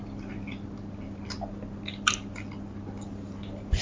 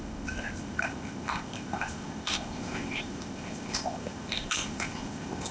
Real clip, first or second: first